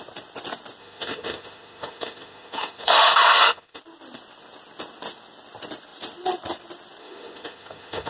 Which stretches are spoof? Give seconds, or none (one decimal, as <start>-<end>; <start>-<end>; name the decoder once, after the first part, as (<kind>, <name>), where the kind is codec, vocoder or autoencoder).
0.8-3.8 (autoencoder, DAC-VAE); 7.0-8.1